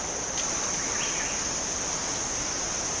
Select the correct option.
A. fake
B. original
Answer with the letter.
B